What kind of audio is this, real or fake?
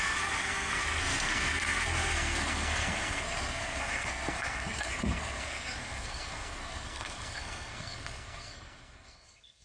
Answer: fake